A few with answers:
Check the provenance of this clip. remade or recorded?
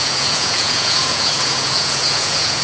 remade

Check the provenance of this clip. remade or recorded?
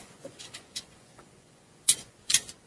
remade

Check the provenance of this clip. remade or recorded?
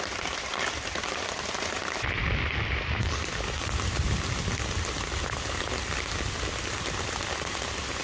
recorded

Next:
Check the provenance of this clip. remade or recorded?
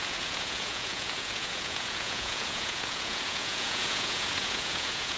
remade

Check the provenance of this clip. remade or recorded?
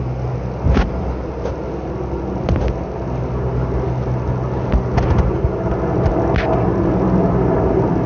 recorded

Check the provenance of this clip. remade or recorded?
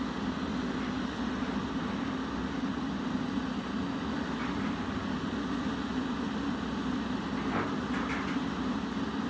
recorded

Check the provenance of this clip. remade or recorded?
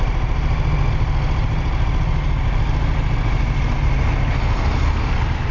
recorded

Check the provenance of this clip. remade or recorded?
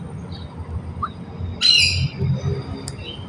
recorded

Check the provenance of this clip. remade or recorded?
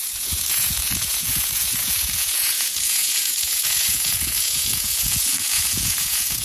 remade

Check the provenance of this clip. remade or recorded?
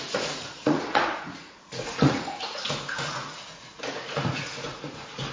remade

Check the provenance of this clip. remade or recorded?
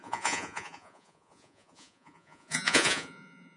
remade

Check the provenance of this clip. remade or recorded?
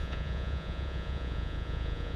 remade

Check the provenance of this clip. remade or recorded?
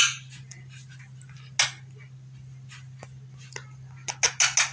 recorded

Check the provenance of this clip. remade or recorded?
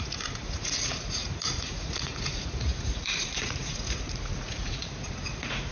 remade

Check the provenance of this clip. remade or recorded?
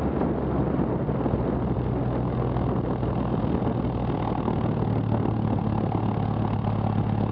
recorded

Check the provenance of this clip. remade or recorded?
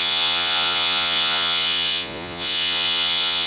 remade